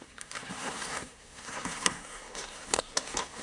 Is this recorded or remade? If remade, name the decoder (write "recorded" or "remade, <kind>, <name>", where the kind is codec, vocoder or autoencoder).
remade, codec, SNAC